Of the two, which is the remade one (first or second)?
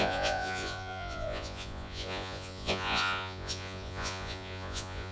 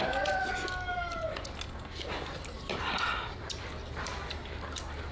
first